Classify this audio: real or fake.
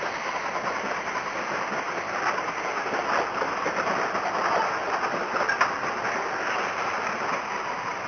real